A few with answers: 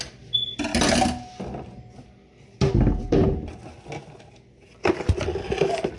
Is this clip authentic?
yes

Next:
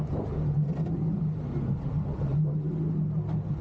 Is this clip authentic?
yes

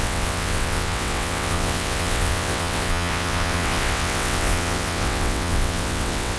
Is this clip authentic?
no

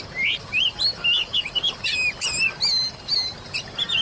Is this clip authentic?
yes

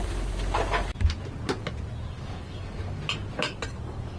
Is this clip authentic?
yes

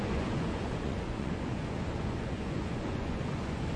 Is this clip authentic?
no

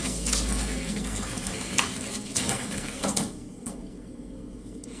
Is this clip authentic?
no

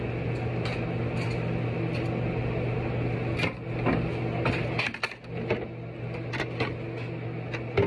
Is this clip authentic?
yes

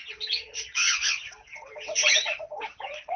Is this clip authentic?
no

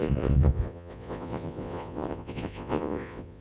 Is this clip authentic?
no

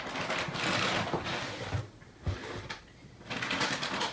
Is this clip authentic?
yes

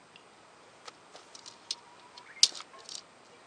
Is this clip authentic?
yes